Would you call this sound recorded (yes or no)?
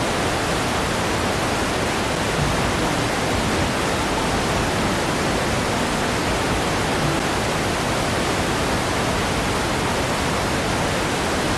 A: yes